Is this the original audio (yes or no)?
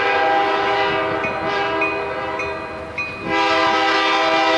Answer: yes